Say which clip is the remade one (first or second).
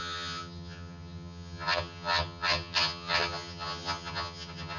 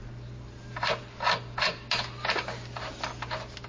first